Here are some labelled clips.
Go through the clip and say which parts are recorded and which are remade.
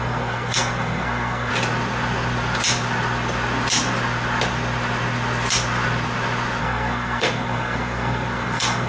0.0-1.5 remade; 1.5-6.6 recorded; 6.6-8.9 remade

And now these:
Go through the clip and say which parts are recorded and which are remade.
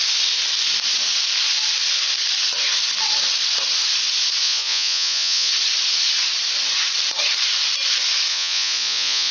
0.0-4.4 recorded; 4.4-5.5 remade; 5.5-8.3 recorded; 8.3-9.3 remade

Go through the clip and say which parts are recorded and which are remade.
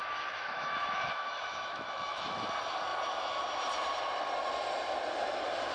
0.0-2.5 remade; 2.5-5.7 recorded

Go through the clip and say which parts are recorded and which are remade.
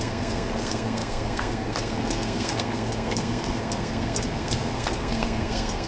0.0-5.9 remade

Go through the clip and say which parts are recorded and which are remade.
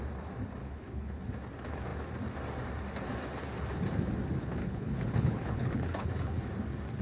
0.0-0.6 recorded; 0.6-1.2 remade; 1.2-4.6 recorded; 4.6-6.4 remade; 6.4-7.0 recorded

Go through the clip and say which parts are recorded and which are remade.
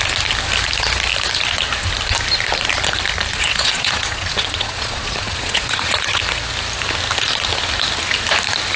0.0-3.3 recorded; 3.3-6.2 remade; 6.2-8.8 recorded